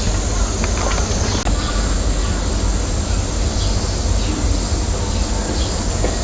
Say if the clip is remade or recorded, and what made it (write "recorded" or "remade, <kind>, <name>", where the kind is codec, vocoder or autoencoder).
recorded